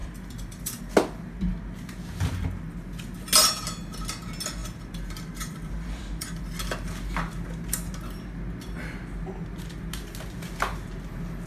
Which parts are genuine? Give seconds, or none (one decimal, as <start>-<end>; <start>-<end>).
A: 0.8-4.6; 6.4-11.5